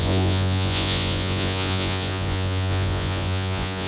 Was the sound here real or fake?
fake